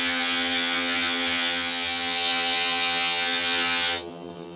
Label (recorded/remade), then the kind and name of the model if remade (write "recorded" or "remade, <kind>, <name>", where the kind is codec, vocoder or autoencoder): remade, vocoder, HiFi-GAN